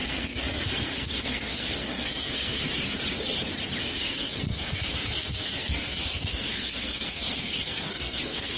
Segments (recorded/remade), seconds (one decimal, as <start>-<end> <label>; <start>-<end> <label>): 0.0-2.6 remade; 2.6-3.8 recorded; 3.8-8.6 remade